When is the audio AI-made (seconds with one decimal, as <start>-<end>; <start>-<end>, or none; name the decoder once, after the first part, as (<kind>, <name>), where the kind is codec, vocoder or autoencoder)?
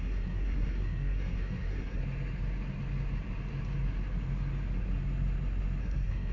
0.0-2.0 (codec, SNAC); 5.8-6.3